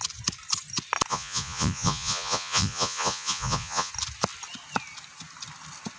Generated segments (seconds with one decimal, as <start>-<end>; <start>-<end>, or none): 1.1-3.9